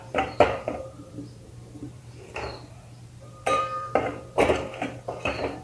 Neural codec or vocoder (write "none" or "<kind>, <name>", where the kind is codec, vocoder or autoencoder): vocoder, BigVGAN v2